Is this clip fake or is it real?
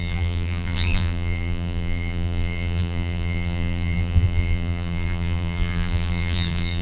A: fake